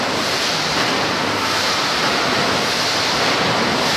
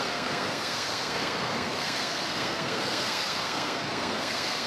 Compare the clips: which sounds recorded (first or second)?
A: first